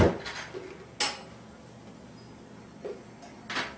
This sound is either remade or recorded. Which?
recorded